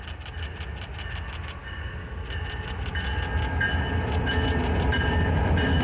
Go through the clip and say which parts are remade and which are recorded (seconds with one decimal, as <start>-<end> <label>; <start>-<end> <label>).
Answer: 0.0-5.8 recorded